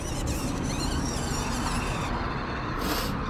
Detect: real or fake real